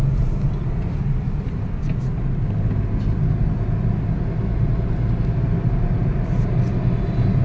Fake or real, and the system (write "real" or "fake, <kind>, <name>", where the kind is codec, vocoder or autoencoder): real